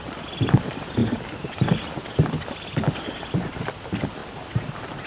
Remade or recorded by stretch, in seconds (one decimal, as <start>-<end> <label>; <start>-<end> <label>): 0.0-5.1 recorded